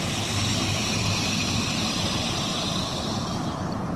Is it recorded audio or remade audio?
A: remade